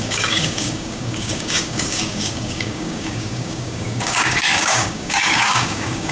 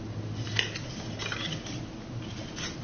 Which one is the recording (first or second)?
second